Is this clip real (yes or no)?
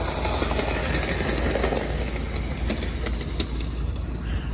yes